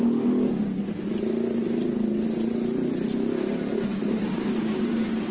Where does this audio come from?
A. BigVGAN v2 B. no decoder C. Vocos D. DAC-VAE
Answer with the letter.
B